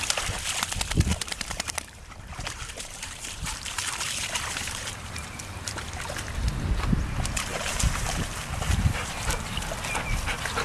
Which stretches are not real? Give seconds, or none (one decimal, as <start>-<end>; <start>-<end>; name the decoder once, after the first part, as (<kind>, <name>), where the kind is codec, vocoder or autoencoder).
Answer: 1.1-6.3 (vocoder, BigVGAN v2); 7.5-9.6